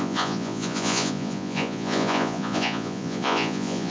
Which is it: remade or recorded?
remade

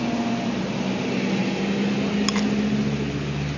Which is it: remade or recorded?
recorded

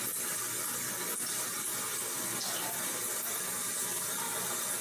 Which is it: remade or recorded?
recorded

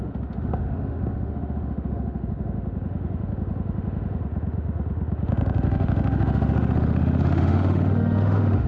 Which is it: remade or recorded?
remade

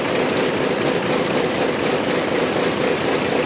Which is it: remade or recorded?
recorded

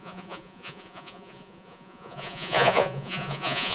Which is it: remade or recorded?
remade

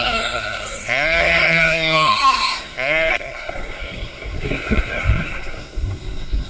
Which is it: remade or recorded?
remade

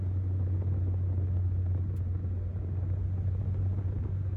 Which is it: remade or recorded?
recorded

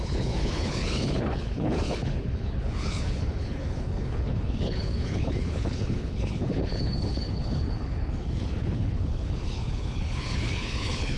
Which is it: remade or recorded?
remade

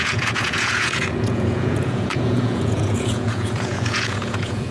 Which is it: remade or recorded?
remade